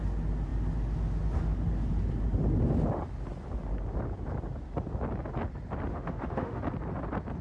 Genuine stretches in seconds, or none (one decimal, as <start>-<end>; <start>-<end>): 0.0-5.9; 6.6-7.4